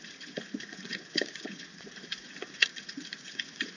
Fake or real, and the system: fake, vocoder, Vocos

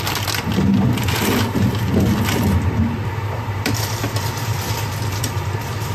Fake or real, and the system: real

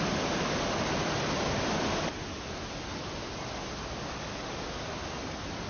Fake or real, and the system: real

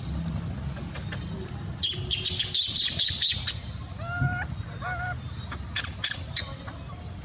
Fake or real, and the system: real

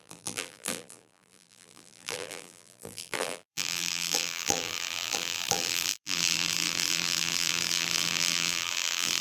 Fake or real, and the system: fake, vocoder, BigVGAN v2